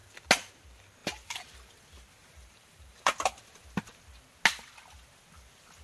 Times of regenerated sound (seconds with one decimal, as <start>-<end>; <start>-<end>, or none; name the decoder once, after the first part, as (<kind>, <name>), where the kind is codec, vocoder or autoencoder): 1.0-1.7 (vocoder, BigVGAN v2); 2.2-3.4